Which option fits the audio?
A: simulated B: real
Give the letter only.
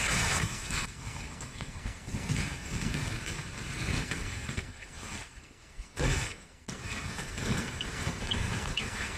A